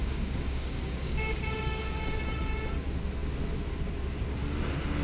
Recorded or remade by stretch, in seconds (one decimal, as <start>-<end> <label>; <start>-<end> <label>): 0.0-1.8 remade; 1.8-5.0 recorded